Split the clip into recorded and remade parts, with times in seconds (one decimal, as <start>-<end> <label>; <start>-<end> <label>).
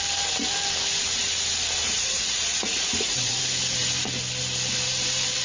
0.0-1.8 recorded; 1.8-3.4 remade; 3.4-5.4 recorded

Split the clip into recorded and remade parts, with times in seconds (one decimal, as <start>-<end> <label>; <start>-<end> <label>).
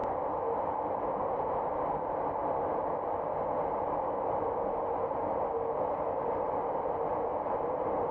0.0-8.1 recorded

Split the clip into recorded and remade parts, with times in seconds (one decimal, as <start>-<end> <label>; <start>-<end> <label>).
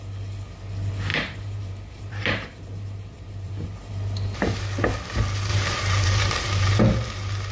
0.0-1.1 recorded; 1.1-3.9 remade; 3.9-5.5 recorded; 5.5-6.8 remade; 6.8-7.5 recorded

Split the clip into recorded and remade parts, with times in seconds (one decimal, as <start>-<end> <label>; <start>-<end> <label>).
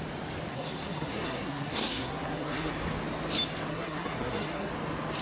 0.0-0.5 recorded; 0.5-2.7 remade; 2.7-3.7 recorded; 3.7-4.7 remade; 4.7-5.2 recorded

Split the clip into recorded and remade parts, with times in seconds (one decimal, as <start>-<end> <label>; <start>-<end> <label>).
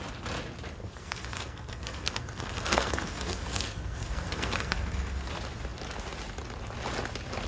0.0-0.8 recorded; 0.8-5.3 remade; 5.3-7.5 recorded